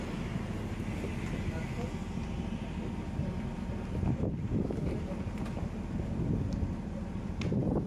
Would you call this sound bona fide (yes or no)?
yes